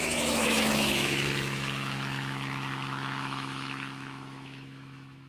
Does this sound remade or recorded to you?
remade